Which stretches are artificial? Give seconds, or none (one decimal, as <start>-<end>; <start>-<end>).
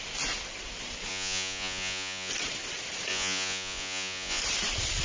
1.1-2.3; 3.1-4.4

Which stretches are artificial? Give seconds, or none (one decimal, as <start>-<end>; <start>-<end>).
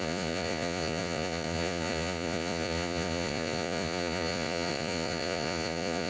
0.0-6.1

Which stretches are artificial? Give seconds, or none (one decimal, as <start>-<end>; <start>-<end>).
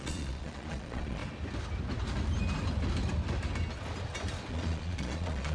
0.0-1.2; 4.5-5.5